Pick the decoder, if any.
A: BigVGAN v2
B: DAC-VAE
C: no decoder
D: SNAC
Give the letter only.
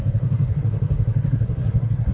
D